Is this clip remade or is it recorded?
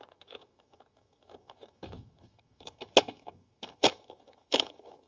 remade